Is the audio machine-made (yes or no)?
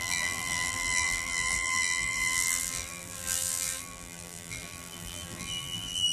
yes